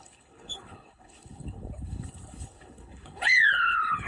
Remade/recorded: remade